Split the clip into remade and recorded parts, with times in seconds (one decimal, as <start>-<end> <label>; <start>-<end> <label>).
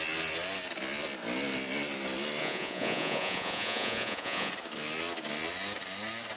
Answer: 0.0-2.4 recorded; 2.4-4.5 remade; 4.5-6.4 recorded